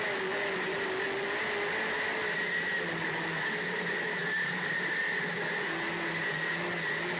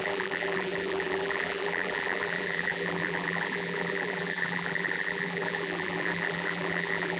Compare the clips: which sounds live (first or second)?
first